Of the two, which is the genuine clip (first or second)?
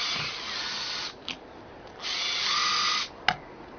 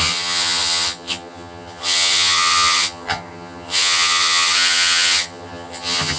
first